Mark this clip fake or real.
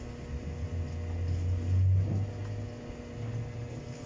real